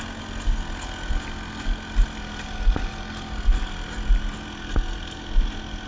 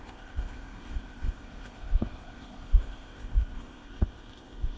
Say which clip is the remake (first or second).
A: second